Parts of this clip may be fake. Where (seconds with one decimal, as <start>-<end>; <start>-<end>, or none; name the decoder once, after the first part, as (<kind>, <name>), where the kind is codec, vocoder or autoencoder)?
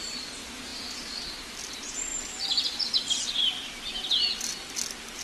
none